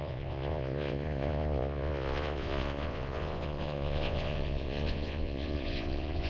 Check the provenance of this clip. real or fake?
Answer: fake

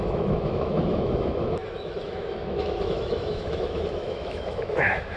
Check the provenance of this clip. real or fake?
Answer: fake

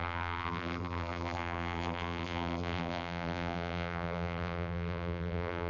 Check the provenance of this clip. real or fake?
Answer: fake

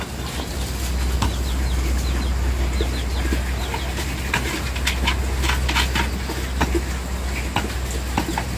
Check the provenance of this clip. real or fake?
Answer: real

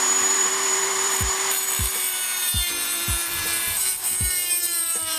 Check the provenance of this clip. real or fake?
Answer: fake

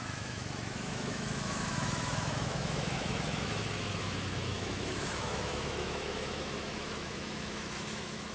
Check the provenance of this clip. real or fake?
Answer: fake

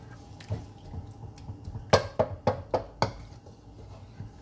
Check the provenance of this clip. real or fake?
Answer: real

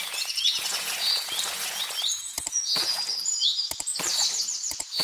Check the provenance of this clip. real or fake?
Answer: fake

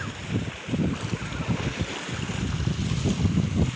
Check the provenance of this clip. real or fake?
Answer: real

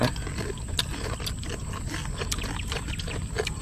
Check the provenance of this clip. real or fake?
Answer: real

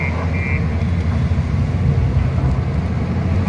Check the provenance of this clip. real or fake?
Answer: real